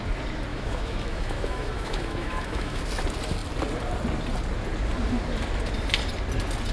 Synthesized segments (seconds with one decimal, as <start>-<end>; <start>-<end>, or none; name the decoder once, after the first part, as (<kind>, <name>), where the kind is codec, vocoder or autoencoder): 0.5-2.8 (autoencoder, DAC-VAE)

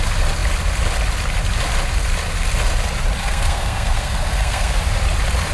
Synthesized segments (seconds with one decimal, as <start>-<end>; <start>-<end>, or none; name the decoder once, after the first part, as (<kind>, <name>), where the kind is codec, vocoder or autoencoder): 3.2-4.8 (codec, SNAC)